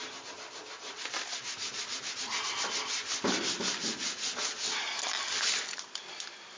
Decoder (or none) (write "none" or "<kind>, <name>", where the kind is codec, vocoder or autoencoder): none